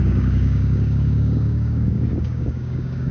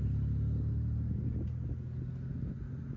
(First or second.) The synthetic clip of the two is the first